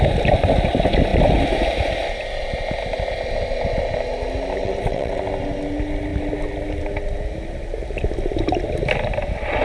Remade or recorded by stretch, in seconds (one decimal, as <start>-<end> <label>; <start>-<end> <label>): 0.0-4.6 recorded; 4.6-5.2 remade; 5.2-9.6 recorded